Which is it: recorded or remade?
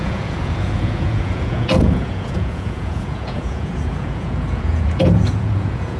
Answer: remade